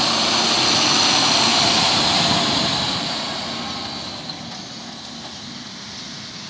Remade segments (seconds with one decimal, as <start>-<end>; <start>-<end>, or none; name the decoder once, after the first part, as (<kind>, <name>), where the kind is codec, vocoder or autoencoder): 1.5-3.9 (vocoder, BigVGAN v2)